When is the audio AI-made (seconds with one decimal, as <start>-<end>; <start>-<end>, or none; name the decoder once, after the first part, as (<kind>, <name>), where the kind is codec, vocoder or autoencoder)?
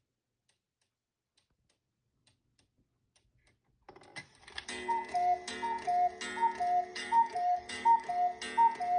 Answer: 6.9-8.1 (codec, DAC)